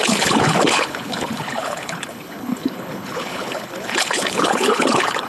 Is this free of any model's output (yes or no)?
no